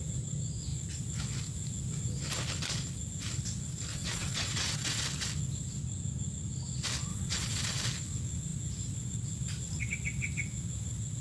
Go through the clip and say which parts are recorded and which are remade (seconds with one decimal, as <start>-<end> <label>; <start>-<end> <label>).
0.0-3.9 recorded; 3.9-5.0 remade; 5.0-7.1 recorded; 7.1-7.8 remade; 7.8-11.2 recorded